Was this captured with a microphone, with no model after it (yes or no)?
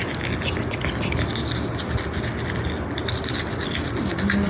yes